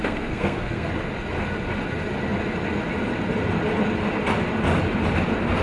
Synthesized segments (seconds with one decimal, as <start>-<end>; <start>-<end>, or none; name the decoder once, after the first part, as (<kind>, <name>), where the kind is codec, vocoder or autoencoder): 0.0-0.9 (codec, SNAC)